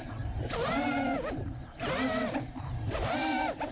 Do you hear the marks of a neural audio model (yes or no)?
yes